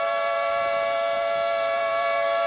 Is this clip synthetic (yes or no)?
yes